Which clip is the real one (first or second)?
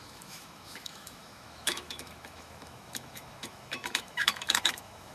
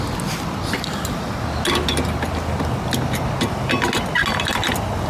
second